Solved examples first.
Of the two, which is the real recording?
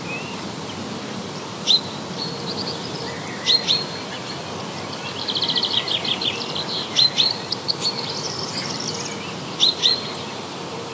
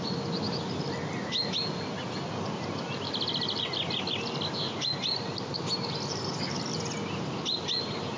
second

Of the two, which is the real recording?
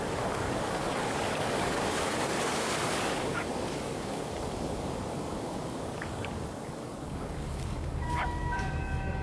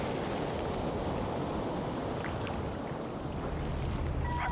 second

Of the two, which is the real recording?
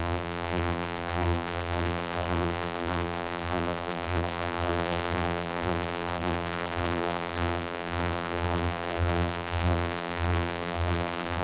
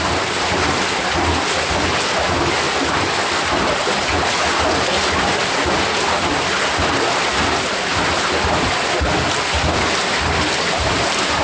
second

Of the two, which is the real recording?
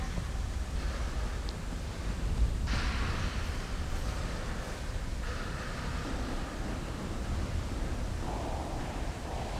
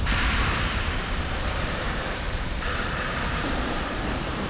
first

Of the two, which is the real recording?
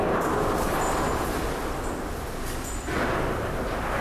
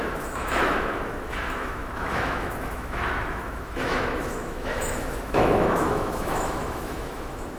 first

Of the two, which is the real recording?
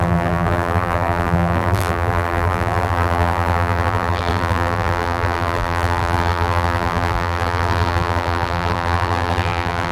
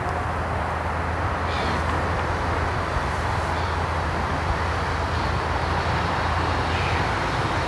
second